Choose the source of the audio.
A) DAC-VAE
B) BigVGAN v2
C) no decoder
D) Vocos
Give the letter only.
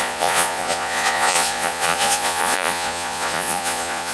D